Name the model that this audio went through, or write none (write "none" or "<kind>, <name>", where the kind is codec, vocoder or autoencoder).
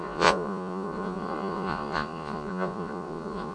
vocoder, Vocos